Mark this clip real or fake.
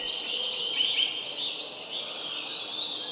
real